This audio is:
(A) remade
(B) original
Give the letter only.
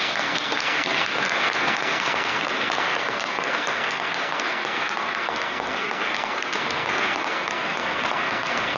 A